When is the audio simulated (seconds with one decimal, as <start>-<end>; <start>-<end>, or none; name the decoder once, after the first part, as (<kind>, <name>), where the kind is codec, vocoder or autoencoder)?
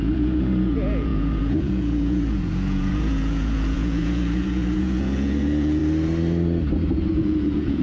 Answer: 0.0-5.8 (vocoder, Vocos); 7.1-7.8